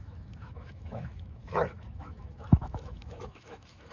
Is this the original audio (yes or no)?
no